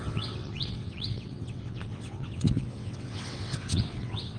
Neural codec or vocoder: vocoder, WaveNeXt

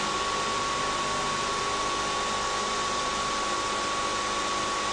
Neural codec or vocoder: none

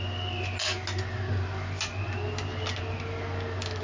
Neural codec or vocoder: none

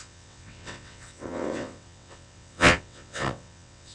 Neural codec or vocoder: vocoder, WaveNeXt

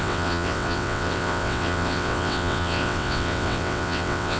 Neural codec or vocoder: vocoder, WaveNeXt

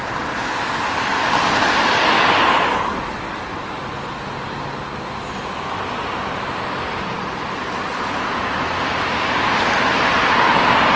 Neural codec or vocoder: none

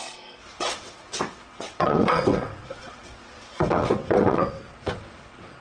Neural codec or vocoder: vocoder, WaveNeXt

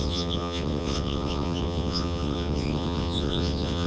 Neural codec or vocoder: vocoder, WaveNeXt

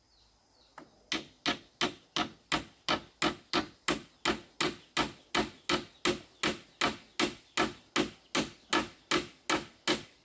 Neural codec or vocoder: none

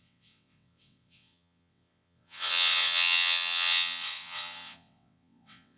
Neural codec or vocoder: vocoder, WaveNeXt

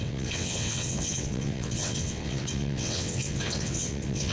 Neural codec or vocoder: vocoder, WaveNeXt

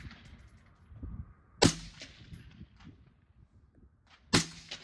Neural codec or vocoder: none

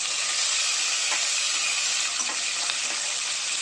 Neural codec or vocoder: none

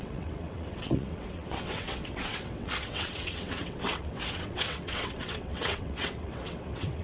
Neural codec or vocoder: vocoder, WaveNeXt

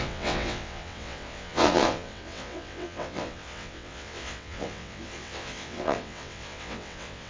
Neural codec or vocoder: vocoder, WaveNeXt